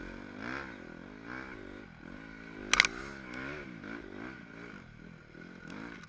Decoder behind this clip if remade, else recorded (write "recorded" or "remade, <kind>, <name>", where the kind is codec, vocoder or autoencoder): recorded